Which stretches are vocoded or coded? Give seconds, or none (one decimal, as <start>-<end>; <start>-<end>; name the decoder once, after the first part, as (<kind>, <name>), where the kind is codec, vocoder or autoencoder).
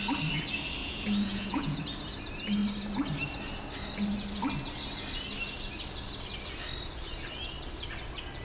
0.8-1.8 (vocoder, Vocos)